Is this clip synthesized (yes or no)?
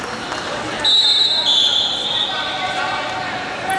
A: no